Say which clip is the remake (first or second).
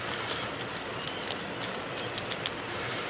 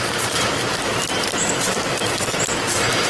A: second